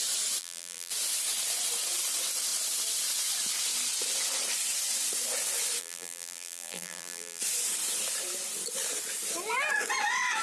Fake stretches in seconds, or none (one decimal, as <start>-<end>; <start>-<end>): 0.4-0.9; 5.8-7.4